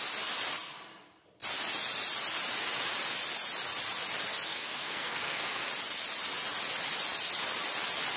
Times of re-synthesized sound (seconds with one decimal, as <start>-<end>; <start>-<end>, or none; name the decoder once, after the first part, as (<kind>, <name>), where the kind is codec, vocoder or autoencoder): 4.5-5.7 (codec, SNAC)